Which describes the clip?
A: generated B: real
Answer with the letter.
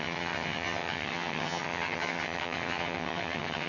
A